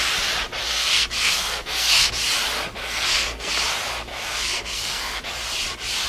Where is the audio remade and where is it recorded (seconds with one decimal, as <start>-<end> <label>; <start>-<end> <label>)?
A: 0.0-0.6 recorded; 0.6-2.1 remade; 2.1-2.8 recorded; 2.8-3.5 remade; 3.5-4.1 recorded; 4.1-5.2 remade; 5.2-6.1 recorded